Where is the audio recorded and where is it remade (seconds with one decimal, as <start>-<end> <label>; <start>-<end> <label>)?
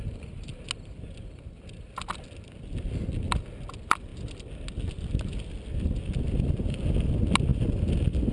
0.0-8.3 recorded